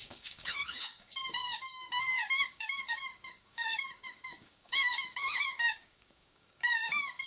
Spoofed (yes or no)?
yes